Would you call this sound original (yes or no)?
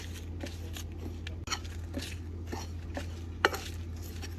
yes